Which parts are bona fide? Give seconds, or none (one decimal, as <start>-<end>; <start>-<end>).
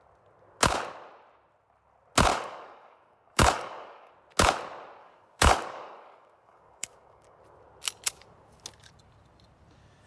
0.0-2.3; 4.1-5.0; 7.4-10.1